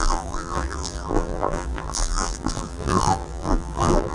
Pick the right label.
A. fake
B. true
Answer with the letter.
A